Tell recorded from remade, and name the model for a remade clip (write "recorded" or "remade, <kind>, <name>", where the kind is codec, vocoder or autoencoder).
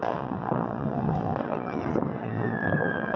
remade, vocoder, Vocos